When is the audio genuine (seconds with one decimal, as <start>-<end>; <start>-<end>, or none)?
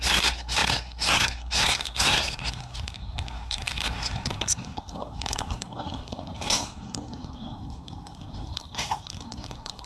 none